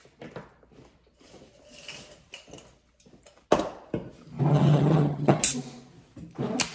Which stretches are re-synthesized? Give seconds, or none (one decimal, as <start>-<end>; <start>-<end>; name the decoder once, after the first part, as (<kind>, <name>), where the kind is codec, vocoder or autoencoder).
4.5-5.4 (vocoder, HiFi-GAN)